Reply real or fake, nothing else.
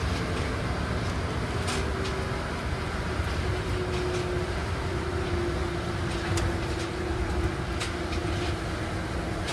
real